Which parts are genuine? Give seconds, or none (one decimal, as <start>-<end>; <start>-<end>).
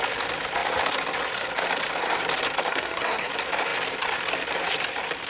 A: 0.0-2.7; 3.3-5.3